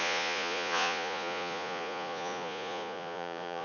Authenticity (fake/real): fake